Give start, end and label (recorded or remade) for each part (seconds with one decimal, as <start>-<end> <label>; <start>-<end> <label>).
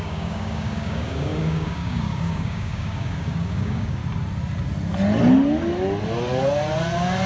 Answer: 0.0-4.0 remade; 4.0-7.3 recorded